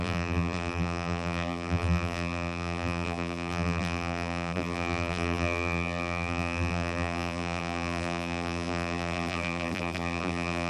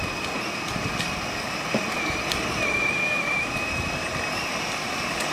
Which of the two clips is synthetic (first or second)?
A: first